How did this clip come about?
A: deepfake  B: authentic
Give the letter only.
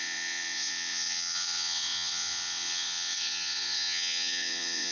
A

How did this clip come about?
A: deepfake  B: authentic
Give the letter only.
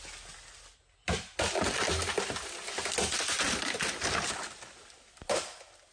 B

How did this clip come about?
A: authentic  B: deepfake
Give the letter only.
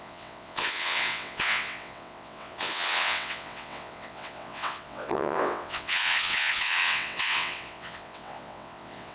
B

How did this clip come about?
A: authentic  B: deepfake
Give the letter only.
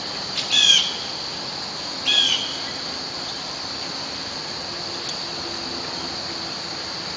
A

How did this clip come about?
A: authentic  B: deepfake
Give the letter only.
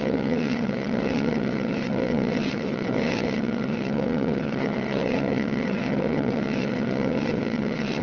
B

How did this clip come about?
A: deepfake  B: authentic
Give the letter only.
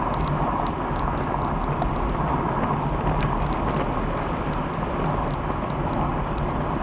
B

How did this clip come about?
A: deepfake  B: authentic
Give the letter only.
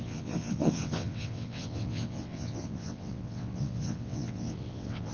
A